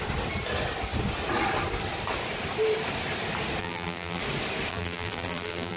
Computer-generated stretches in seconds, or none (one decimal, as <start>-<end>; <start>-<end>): 3.6-4.2; 4.7-5.8